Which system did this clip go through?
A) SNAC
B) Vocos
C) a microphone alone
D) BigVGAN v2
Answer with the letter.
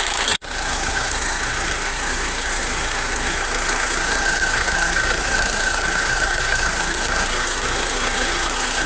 A